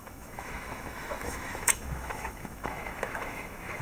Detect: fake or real fake